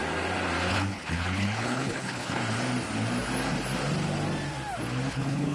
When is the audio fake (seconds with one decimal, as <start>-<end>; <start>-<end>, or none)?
0.7-2.4; 5.1-5.5